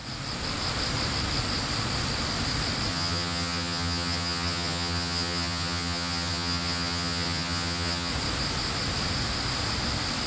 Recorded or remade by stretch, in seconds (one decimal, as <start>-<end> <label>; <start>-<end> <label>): 0.0-2.9 recorded; 2.9-8.1 remade; 8.1-10.3 recorded

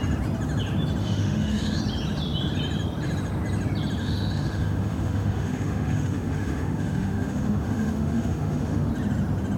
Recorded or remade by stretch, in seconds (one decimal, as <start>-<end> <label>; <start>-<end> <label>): 0.0-1.0 recorded; 1.0-1.8 remade; 1.8-4.0 recorded; 4.0-8.9 remade; 8.9-9.6 recorded

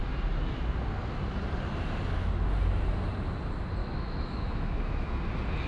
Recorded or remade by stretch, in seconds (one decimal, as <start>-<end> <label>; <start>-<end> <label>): 0.0-3.8 recorded; 3.8-5.2 remade; 5.2-5.7 recorded